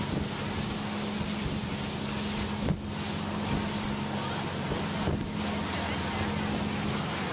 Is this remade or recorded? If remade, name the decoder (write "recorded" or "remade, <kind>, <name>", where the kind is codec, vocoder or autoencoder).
recorded